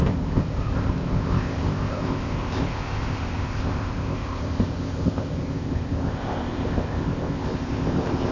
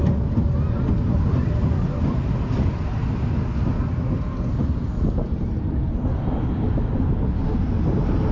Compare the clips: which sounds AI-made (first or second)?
first